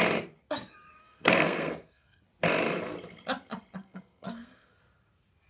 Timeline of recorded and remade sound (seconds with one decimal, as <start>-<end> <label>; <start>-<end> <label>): 0.0-1.0 recorded; 1.0-2.2 remade; 2.2-3.8 recorded; 3.8-4.8 remade; 4.8-5.5 recorded